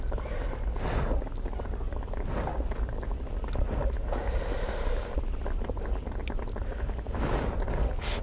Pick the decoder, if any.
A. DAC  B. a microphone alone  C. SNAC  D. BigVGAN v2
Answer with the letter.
B